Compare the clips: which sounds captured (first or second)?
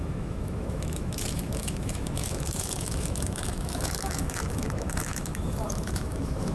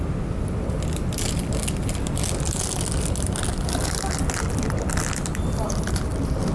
second